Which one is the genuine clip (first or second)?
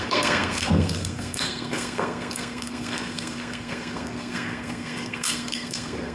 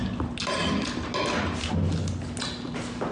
second